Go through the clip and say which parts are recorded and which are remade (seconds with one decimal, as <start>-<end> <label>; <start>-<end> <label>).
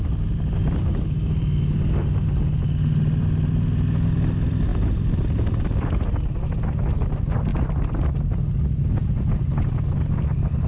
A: 0.0-10.7 recorded